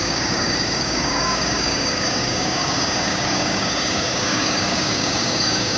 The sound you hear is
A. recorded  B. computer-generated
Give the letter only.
B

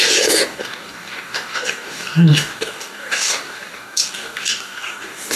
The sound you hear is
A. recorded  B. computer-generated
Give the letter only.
B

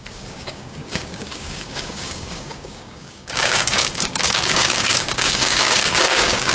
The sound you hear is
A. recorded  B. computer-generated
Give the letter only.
B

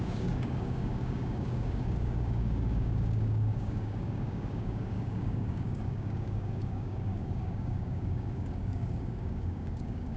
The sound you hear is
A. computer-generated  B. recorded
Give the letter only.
A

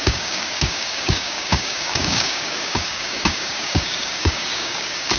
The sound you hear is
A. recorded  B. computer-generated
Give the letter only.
B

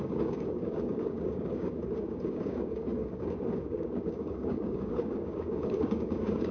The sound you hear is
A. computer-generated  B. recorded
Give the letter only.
A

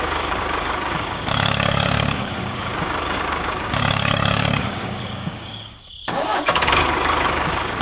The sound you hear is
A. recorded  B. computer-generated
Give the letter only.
B